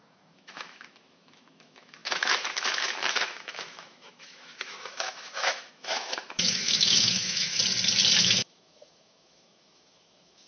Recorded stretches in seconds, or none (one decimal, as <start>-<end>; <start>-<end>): 7.6-8.2